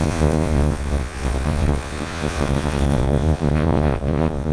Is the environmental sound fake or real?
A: fake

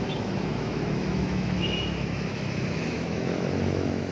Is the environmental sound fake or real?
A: fake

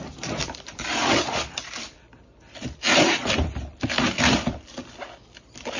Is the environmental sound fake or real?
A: fake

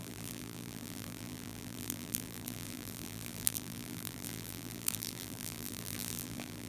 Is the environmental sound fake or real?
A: fake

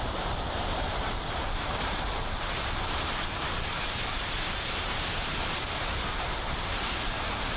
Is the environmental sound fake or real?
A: fake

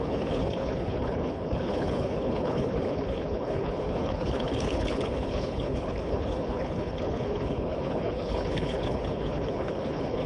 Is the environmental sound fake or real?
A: fake